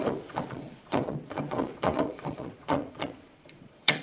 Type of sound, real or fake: fake